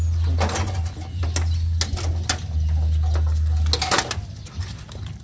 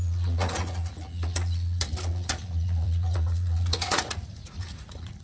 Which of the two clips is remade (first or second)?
second